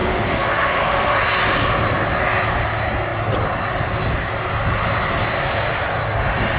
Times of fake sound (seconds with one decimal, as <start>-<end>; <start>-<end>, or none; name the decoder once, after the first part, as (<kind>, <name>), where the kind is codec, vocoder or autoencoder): 0.0-1.2 (autoencoder, DAC-VAE)